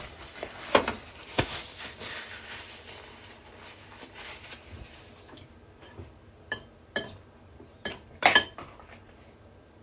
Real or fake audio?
fake